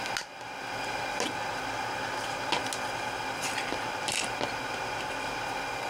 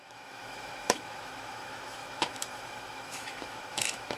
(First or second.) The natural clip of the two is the first